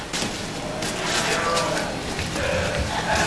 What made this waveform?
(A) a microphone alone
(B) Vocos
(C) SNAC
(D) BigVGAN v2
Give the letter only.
D